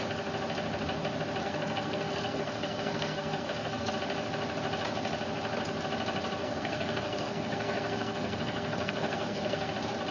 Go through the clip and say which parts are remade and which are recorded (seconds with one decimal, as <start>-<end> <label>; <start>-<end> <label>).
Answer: 0.0-1.4 recorded; 1.4-3.9 remade; 3.9-6.4 recorded; 6.4-9.7 remade; 9.7-10.1 recorded

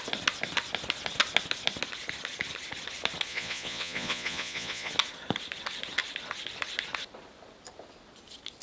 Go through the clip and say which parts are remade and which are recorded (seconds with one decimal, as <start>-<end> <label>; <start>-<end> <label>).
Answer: 0.0-3.3 recorded; 3.3-4.9 remade; 4.9-8.6 recorded

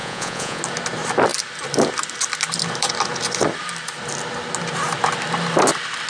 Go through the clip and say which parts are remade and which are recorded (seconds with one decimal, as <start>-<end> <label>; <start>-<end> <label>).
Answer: 0.0-0.6 remade; 0.6-6.1 recorded

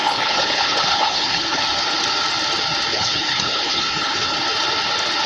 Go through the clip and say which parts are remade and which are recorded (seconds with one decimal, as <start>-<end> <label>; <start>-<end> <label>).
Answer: 0.0-1.6 remade; 1.6-2.9 recorded; 2.9-4.4 remade; 4.4-5.3 recorded

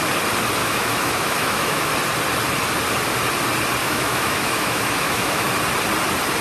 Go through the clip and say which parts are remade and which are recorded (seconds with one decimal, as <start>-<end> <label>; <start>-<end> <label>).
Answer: 0.0-0.6 recorded; 0.6-1.9 remade; 1.9-3.8 recorded; 3.8-5.5 remade; 5.5-6.4 recorded

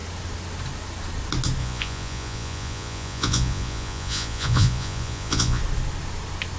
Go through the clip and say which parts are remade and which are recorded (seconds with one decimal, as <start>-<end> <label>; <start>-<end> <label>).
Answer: 0.0-1.6 recorded; 1.6-5.6 remade; 5.6-6.6 recorded

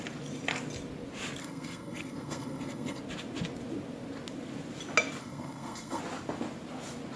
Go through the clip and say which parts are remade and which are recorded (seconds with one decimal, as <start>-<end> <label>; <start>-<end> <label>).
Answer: 0.0-1.4 recorded; 1.4-3.0 remade; 3.0-5.2 recorded; 5.2-6.0 remade; 6.0-7.2 recorded